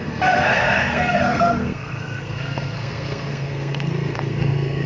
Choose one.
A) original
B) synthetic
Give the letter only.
B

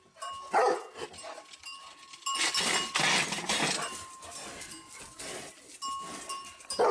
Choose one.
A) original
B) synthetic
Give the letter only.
A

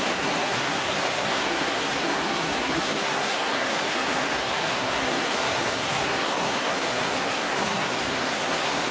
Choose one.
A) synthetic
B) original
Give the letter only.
A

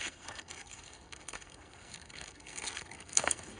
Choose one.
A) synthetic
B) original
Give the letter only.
A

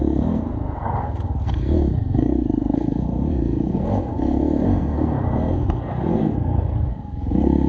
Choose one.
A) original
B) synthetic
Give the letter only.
B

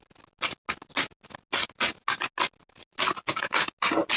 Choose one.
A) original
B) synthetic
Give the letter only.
A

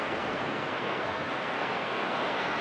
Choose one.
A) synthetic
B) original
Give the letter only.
A